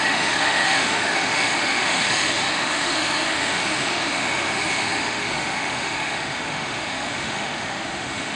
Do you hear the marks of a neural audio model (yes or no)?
yes